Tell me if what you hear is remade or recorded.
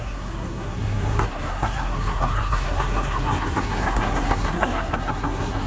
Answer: remade